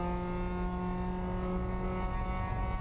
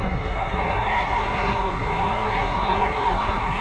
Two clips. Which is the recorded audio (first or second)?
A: first